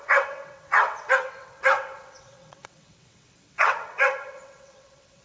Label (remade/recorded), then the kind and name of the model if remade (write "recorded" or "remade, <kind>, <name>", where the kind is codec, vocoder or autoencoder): remade, vocoder, WaveNeXt